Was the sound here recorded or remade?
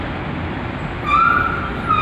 recorded